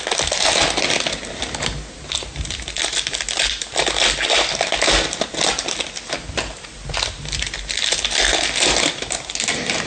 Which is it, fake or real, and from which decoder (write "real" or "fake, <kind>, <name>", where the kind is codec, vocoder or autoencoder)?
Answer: real